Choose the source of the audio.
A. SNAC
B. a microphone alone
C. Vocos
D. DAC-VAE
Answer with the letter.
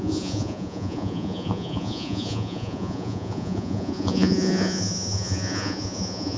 C